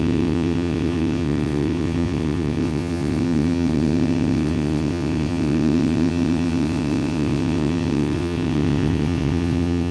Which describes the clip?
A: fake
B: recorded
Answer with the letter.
A